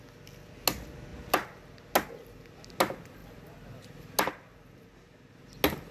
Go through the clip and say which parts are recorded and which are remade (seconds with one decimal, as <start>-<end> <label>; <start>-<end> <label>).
0.0-5.9 recorded